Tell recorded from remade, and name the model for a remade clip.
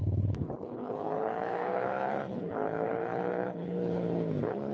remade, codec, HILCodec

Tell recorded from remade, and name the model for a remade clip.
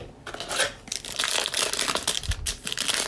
recorded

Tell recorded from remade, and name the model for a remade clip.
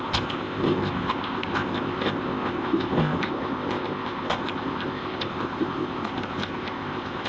remade, codec, ZipCodec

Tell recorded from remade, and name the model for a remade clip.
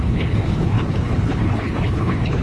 remade, codec, HILCodec